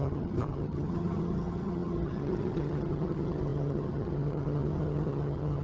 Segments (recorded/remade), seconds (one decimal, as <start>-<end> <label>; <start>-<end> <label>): 0.0-5.6 remade